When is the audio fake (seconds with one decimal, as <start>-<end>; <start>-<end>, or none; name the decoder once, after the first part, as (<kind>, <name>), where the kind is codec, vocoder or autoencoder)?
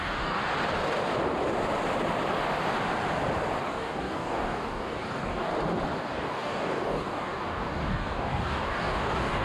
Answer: 0.0-0.4 (codec, DAC); 3.6-5.5; 6.0-9.4